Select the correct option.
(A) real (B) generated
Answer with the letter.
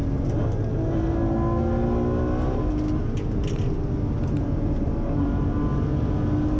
A